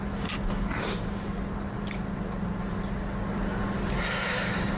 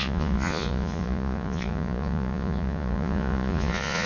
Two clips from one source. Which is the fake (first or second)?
second